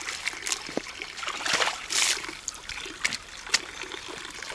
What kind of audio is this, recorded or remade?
remade